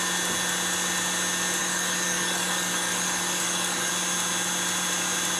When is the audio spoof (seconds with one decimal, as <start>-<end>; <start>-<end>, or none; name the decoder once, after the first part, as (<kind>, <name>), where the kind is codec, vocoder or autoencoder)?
1.6-3.9 (codec, DAC)